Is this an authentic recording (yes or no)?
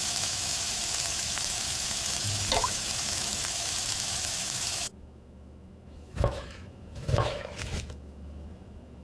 no